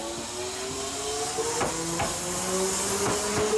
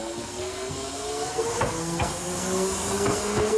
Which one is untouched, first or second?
first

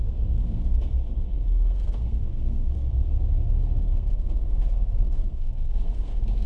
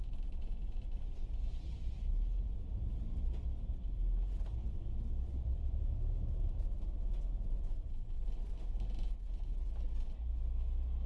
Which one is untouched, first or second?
second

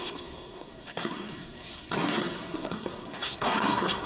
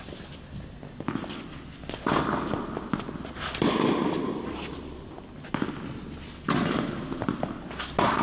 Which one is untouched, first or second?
second